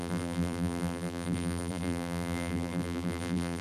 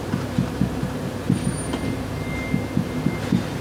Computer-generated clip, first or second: first